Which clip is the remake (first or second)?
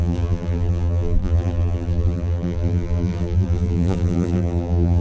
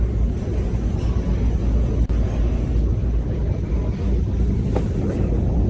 first